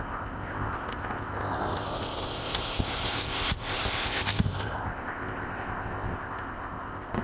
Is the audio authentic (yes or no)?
no